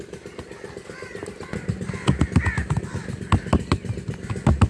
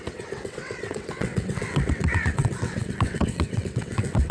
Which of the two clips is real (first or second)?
first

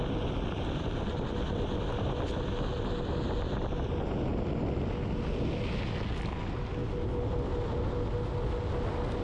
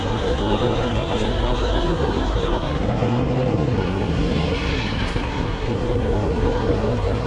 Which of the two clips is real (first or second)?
first